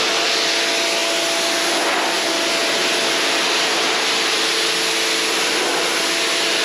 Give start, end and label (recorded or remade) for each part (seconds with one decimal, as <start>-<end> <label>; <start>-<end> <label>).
0.0-6.6 recorded